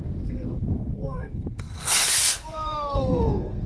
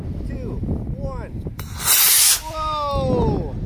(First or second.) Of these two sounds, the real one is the second